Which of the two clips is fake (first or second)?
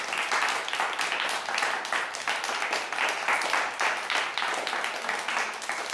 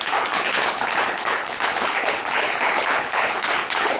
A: second